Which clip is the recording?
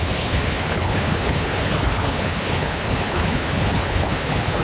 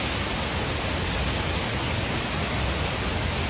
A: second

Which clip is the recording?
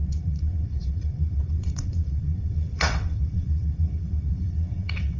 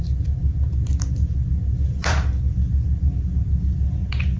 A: second